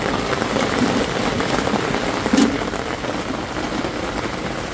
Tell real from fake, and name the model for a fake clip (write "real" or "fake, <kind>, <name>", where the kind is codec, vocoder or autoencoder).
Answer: real